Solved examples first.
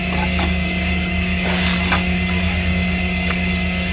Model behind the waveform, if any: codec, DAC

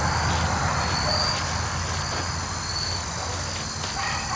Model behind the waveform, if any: none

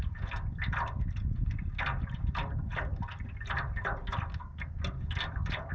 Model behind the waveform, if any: none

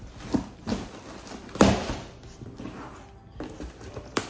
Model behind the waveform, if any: none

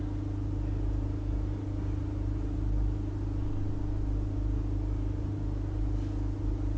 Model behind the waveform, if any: none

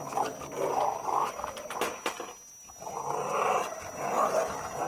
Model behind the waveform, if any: none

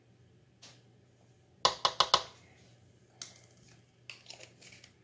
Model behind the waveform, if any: none